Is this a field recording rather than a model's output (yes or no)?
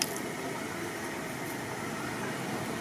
yes